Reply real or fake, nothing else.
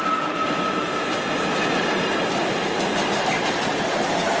real